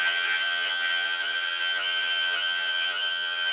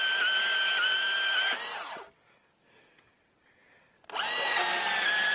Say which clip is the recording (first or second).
second